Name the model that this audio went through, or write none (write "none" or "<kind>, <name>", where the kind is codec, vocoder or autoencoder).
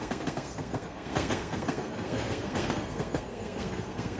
codec, SNAC